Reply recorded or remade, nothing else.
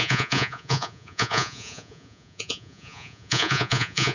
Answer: remade